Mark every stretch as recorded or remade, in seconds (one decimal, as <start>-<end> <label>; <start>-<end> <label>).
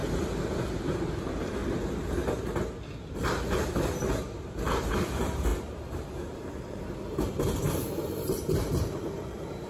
0.0-1.2 recorded; 1.2-1.6 remade; 1.6-3.1 recorded; 3.1-9.7 remade